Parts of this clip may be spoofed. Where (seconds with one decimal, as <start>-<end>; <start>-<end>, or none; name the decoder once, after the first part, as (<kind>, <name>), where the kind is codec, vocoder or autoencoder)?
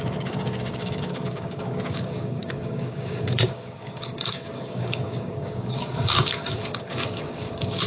0.0-7.9 (codec, DAC)